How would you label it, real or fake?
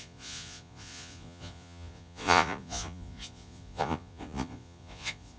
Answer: fake